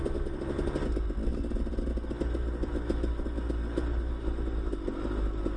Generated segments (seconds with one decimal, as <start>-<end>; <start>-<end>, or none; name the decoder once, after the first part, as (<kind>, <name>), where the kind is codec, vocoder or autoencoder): none